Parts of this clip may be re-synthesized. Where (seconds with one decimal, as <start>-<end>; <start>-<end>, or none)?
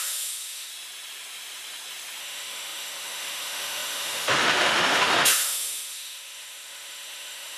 0.0-0.7; 2.2-7.6